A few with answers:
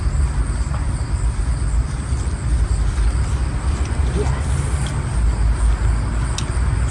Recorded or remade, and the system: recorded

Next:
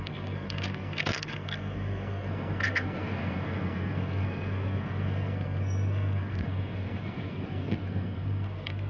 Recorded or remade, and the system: remade, codec, SNAC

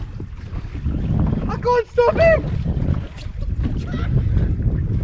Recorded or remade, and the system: recorded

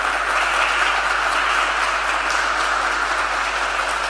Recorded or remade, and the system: recorded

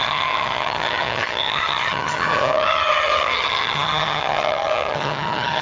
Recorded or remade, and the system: remade, vocoder, HiFi-GAN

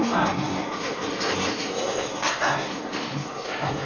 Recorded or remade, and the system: remade, codec, SNAC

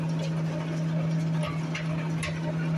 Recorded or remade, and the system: recorded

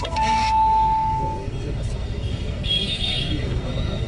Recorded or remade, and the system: remade, codec, SNAC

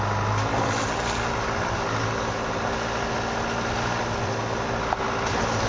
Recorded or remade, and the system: recorded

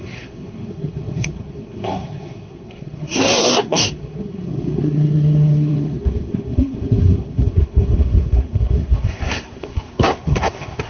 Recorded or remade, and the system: remade, codec, SNAC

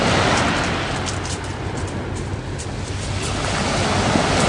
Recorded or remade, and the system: recorded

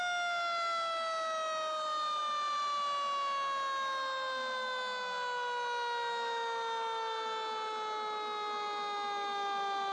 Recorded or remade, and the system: recorded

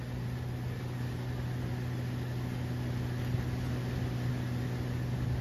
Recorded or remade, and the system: recorded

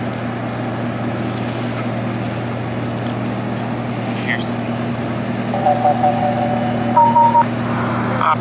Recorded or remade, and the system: recorded